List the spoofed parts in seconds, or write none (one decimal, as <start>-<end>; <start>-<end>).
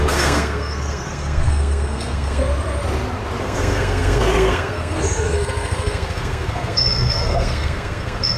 0.0-2.4; 3.4-8.4